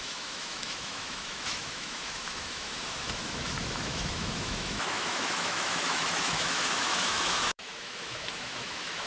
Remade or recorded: remade